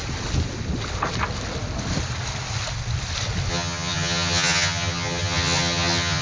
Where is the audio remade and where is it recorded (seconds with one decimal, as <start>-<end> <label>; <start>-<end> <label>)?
0.0-3.5 recorded; 3.5-6.2 remade